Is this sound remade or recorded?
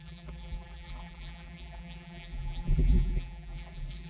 remade